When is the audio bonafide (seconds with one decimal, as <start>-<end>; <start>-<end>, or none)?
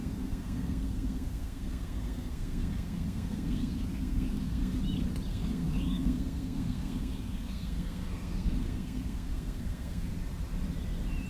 4.8-5.3; 10.1-11.3